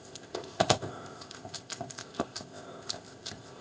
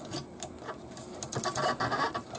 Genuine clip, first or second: second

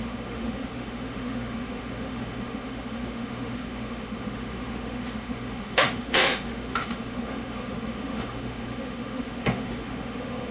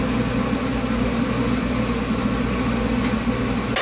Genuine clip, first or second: second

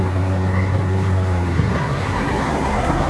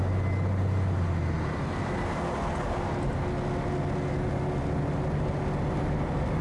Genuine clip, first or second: second